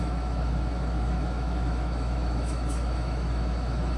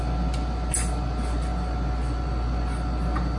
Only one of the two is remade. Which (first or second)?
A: first